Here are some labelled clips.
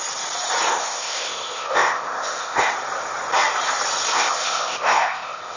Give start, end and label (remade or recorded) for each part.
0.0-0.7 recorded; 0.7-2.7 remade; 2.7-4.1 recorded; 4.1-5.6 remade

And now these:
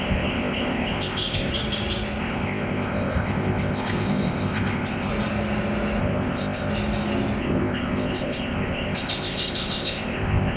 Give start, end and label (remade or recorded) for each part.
0.0-1.5 remade; 1.5-2.2 recorded; 2.2-5.1 remade; 5.1-6.0 recorded; 6.0-6.7 remade; 6.7-7.4 recorded; 7.4-10.6 remade

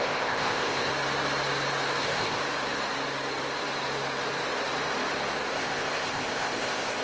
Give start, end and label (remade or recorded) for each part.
0.0-0.9 remade; 0.9-2.0 recorded; 2.0-2.4 remade; 2.4-5.5 recorded; 5.5-7.0 remade

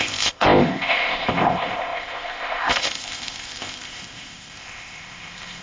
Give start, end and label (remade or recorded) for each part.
0.0-5.6 remade

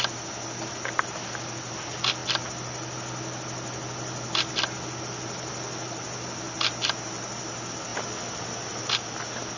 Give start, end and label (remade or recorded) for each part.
0.0-9.6 recorded

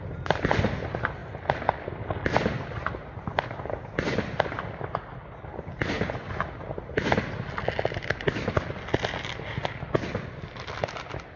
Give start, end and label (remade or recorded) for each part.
0.0-11.4 recorded

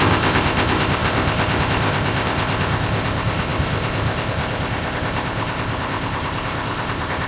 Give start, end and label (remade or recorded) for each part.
0.0-7.3 remade

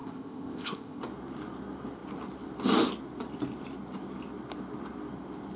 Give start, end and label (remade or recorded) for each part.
0.0-1.0 remade; 1.0-5.6 recorded